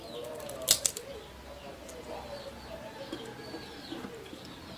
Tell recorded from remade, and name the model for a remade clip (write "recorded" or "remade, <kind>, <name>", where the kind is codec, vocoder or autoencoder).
recorded